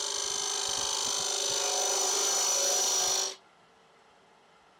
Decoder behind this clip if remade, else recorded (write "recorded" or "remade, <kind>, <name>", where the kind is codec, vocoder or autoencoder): recorded